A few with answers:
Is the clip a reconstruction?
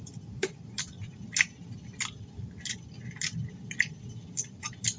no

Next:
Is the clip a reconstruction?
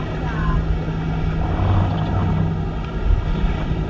no